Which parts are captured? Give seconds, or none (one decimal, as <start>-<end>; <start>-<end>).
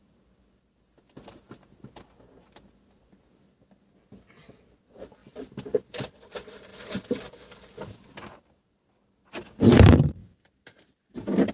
0.0-11.5